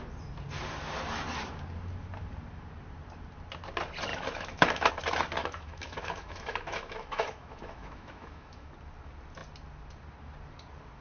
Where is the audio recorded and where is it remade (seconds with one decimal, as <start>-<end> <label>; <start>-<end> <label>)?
0.0-4.1 recorded; 4.1-4.9 remade; 4.9-5.4 recorded; 5.4-8.7 remade; 8.7-11.0 recorded